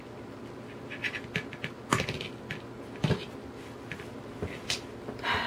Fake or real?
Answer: real